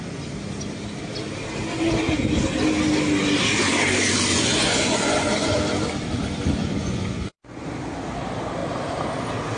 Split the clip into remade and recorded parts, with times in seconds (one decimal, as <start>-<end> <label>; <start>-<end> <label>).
0.0-4.3 recorded; 4.3-5.6 remade; 5.6-6.6 recorded; 6.6-7.7 remade; 7.7-9.6 recorded